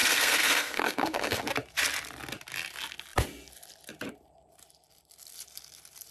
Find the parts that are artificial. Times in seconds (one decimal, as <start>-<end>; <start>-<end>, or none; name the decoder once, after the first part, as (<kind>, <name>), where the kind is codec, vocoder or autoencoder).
0.0-1.4 (codec, SNAC)